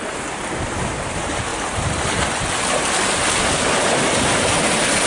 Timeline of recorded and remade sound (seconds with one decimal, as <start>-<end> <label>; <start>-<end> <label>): 0.0-5.1 recorded